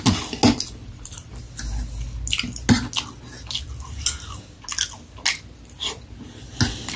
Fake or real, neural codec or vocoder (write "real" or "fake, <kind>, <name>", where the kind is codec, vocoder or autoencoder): real